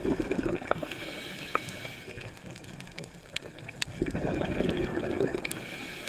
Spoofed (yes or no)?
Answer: yes